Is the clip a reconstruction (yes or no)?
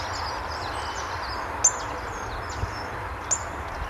no